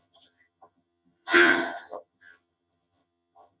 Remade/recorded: remade